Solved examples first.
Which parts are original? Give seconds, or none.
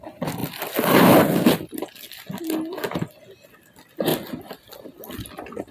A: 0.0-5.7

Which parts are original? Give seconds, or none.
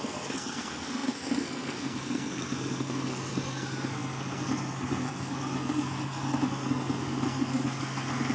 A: none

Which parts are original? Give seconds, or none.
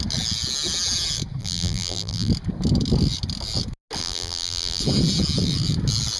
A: 0.0-1.4; 2.3-4.0; 4.8-6.2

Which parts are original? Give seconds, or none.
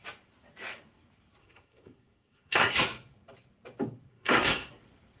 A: 0.0-1.4; 2.7-4.1; 4.7-5.2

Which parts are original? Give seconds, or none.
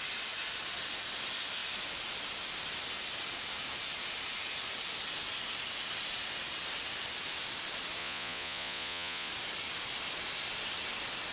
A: 0.0-8.0; 9.3-11.3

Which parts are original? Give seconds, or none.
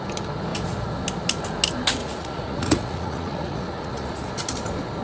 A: 0.0-2.0; 4.3-5.0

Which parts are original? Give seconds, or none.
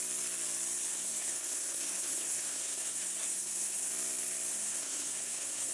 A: 0.0-0.9; 3.9-4.5